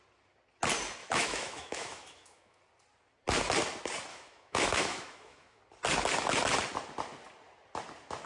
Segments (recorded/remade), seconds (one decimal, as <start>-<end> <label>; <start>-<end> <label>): 0.0-1.0 recorded; 1.0-2.6 remade; 2.6-4.1 recorded; 4.1-5.6 remade; 5.6-8.3 recorded